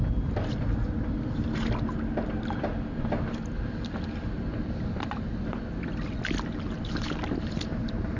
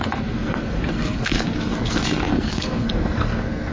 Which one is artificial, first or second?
second